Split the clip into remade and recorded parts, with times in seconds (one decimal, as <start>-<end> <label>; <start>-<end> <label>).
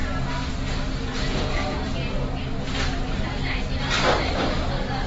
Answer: 0.0-1.1 recorded; 1.1-1.9 remade; 1.9-5.1 recorded